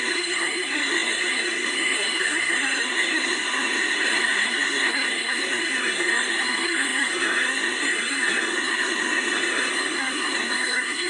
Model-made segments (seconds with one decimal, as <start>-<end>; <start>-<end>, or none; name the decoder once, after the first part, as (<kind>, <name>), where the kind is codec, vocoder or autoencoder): 0.0-11.1 (codec, SNAC)